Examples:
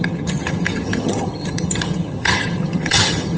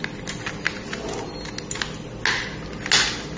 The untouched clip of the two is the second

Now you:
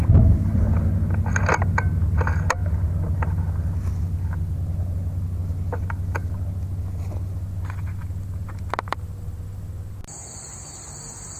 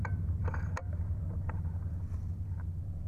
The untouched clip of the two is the first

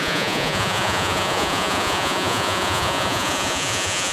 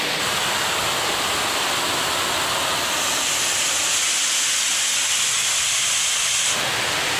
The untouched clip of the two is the second